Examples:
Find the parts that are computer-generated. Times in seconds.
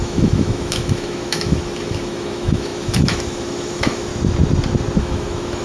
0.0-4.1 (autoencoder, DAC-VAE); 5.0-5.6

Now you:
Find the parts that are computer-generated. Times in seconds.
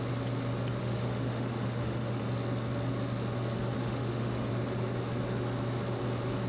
0.8-2.2 (autoencoder, DAC-VAE); 3.8-4.5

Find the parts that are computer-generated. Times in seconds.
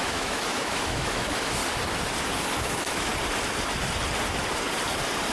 0.0-1.6 (autoencoder, DAC-VAE); 2.6-3.1